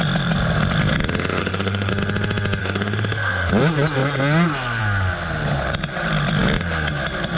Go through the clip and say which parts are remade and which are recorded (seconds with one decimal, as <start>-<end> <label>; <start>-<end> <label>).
0.0-1.4 recorded; 1.4-1.9 remade; 1.9-2.6 recorded; 2.6-3.5 remade; 3.5-7.4 recorded